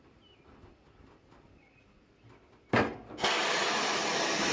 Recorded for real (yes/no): yes